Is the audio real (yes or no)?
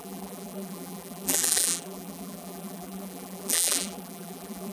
no